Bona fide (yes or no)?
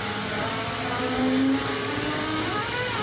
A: yes